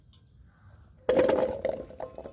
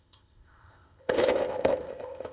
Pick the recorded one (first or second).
first